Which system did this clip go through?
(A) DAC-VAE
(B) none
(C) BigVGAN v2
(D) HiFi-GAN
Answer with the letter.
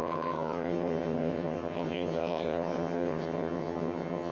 D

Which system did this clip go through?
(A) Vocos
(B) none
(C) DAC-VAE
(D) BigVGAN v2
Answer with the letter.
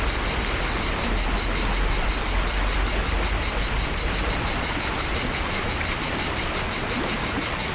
B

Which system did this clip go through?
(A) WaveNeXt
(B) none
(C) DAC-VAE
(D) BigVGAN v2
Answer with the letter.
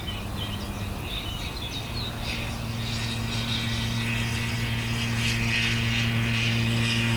B